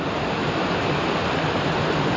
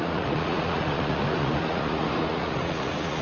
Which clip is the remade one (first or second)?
second